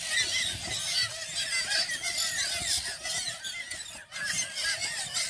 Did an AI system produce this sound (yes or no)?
no